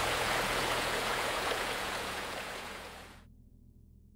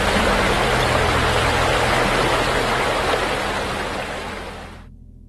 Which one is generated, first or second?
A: first